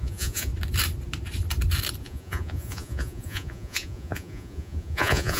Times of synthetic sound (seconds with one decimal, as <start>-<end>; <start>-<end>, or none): 0.0-0.5; 2.0-5.4